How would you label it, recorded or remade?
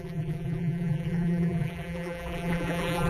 remade